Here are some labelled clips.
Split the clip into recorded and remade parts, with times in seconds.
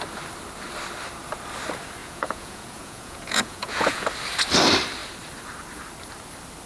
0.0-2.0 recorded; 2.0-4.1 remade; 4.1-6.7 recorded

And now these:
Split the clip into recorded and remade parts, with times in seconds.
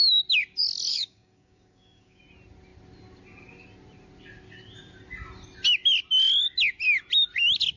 0.0-0.9 recorded; 0.9-2.2 remade; 2.2-7.8 recorded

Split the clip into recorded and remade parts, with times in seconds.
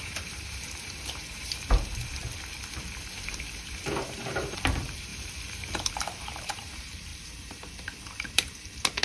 0.0-2.2 remade; 2.2-3.1 recorded; 3.1-9.0 remade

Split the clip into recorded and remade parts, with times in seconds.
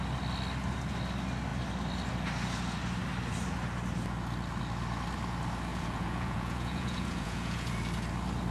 0.0-5.7 recorded; 5.7-7.7 remade; 7.7-8.5 recorded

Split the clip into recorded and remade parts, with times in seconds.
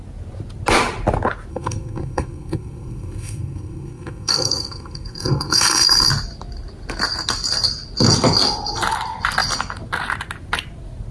0.0-1.5 recorded; 1.5-6.1 remade; 6.1-11.1 recorded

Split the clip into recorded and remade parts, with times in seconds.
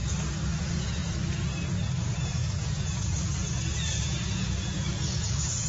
0.0-0.6 recorded; 0.6-1.0 remade; 1.0-2.0 recorded; 2.0-5.7 remade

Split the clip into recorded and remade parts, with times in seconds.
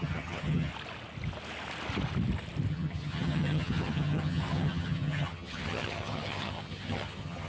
0.0-0.7 remade; 0.7-2.7 recorded; 2.7-7.5 remade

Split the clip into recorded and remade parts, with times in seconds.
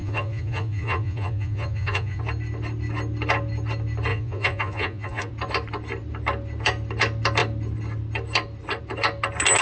0.0-2.2 remade; 2.2-4.1 recorded; 4.1-5.3 remade; 5.3-9.6 recorded